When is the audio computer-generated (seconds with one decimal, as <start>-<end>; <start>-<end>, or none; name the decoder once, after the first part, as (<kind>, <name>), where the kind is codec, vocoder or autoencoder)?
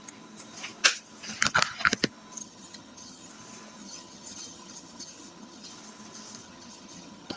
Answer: 2.4-3.3 (vocoder, HiFi-GAN); 3.8-5.7; 6.4-7.4